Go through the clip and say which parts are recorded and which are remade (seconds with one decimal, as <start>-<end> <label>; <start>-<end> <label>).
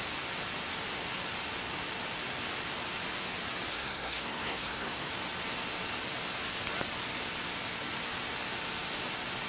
0.0-3.7 recorded; 3.7-5.1 remade; 5.1-9.5 recorded